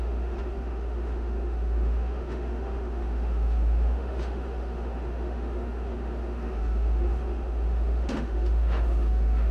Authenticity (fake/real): fake